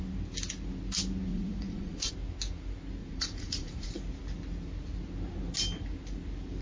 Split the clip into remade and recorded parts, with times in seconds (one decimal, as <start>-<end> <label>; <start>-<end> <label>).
0.0-1.3 recorded; 1.3-2.1 remade; 2.1-3.0 recorded; 3.0-3.9 remade; 3.9-6.6 recorded